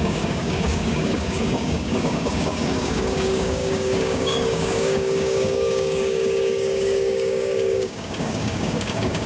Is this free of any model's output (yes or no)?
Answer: no